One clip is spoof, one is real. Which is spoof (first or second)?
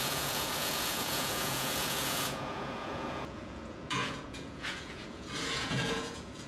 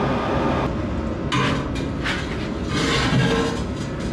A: first